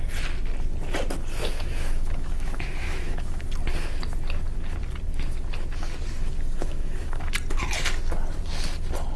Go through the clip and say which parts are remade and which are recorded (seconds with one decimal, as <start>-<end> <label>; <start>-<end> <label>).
0.0-1.4 recorded; 1.4-3.4 remade; 3.4-6.6 recorded; 6.6-7.3 remade; 7.3-9.2 recorded